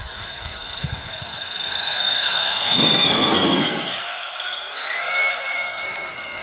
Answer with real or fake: fake